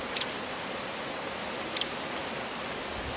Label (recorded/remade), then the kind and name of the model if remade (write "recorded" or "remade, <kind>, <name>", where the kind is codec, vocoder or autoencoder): recorded